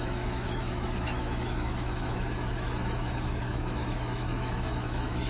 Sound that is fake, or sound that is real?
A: fake